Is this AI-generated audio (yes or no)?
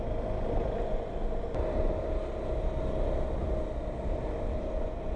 no